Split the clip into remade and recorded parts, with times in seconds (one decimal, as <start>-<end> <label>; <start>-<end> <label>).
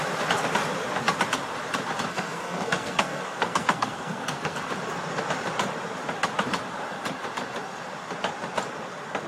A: 0.0-2.1 recorded; 2.1-4.6 remade; 4.6-9.3 recorded